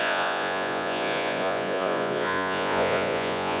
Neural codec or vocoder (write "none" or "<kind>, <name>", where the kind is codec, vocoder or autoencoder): vocoder, Vocos